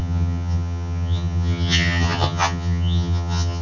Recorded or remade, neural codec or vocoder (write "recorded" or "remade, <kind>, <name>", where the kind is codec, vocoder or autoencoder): remade, vocoder, HiFi-GAN